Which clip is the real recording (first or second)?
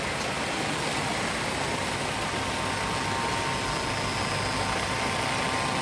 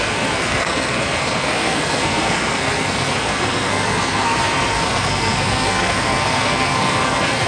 first